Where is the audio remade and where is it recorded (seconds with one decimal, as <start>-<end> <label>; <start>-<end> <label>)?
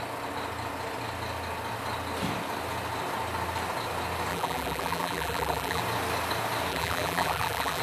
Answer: 0.0-4.3 recorded; 4.3-5.8 remade; 5.8-6.7 recorded; 6.7-7.8 remade